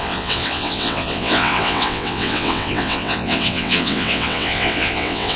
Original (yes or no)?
no